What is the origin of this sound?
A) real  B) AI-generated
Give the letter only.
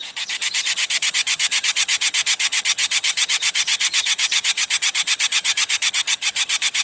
B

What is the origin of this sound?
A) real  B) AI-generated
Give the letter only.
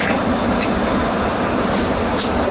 A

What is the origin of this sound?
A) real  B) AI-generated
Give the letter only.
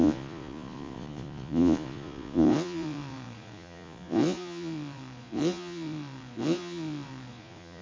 B